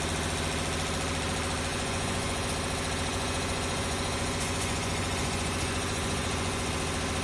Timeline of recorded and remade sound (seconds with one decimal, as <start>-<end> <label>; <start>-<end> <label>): 0.0-1.7 recorded; 1.7-2.5 remade; 2.5-3.1 recorded; 3.1-6.7 remade; 6.7-7.2 recorded